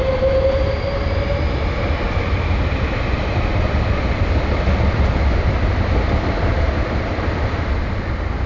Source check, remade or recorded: recorded